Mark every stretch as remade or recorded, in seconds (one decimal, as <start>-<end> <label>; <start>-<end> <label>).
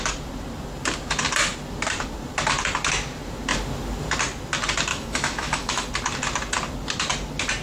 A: 0.0-4.9 recorded; 4.9-5.9 remade; 5.9-7.6 recorded